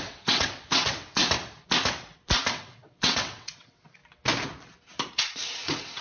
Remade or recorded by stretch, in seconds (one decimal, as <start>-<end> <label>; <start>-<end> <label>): 0.0-1.2 remade; 1.2-2.5 recorded; 2.5-4.0 remade; 4.0-5.2 recorded; 5.2-6.0 remade